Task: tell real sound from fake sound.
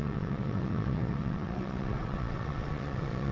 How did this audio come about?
fake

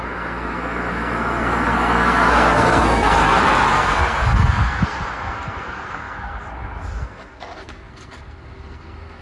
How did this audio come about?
fake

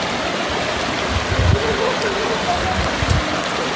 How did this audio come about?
real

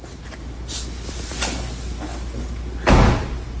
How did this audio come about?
real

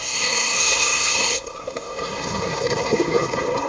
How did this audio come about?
fake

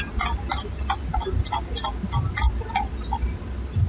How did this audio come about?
real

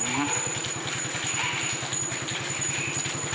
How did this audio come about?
real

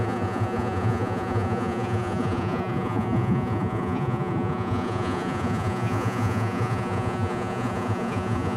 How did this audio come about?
fake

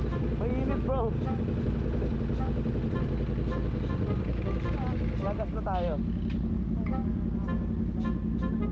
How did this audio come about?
real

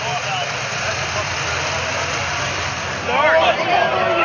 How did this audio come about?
real